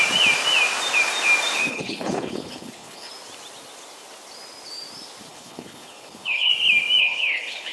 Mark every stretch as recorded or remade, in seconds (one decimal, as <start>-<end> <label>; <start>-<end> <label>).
0.0-1.7 recorded; 1.7-3.1 remade; 3.1-5.3 recorded; 5.3-6.5 remade; 6.5-7.0 recorded; 7.0-7.7 remade